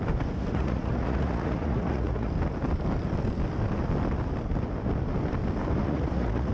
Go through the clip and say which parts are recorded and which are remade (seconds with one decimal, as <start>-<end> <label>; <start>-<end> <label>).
0.0-0.4 recorded; 0.4-2.3 remade; 2.3-5.8 recorded; 5.8-6.5 remade